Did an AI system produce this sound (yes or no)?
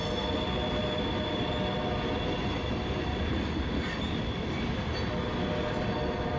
no